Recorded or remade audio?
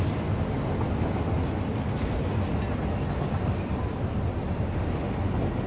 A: recorded